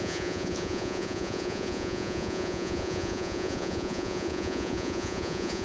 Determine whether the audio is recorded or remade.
remade